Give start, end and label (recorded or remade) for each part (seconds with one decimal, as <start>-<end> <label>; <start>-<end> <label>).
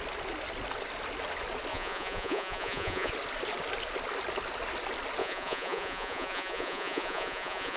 0.0-1.7 recorded; 1.7-3.1 remade; 3.1-5.2 recorded; 5.2-7.8 remade